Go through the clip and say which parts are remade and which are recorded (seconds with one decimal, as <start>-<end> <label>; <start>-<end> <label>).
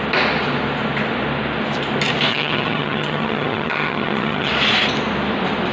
0.0-2.3 recorded; 2.3-4.5 remade; 4.5-5.7 recorded